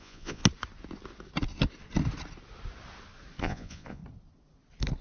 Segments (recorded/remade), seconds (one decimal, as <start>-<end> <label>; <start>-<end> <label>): 0.0-0.4 remade; 0.4-3.4 recorded; 3.4-4.0 remade; 4.0-5.0 recorded